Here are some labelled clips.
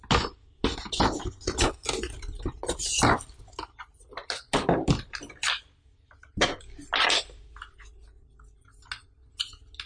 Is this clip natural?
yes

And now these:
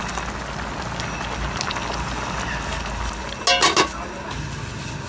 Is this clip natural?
yes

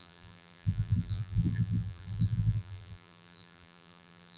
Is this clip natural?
no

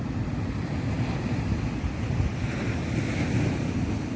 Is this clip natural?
yes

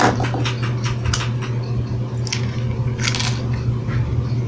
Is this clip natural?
yes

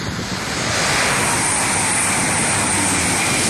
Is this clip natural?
no